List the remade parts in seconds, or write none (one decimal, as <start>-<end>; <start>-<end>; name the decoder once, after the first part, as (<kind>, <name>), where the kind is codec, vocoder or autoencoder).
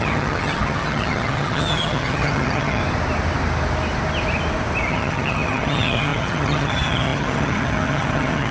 0.0-2.8 (vocoder, HiFi-GAN); 4.9-8.5